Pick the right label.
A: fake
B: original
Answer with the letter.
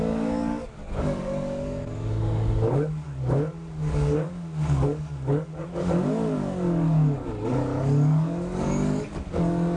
A